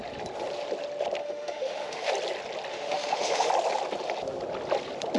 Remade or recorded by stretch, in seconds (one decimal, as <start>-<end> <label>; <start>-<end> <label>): 0.0-1.2 recorded; 1.2-2.1 remade; 2.1-2.7 recorded; 2.7-3.5 remade; 3.5-5.2 recorded